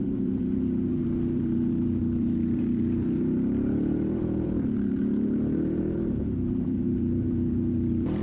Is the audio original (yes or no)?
no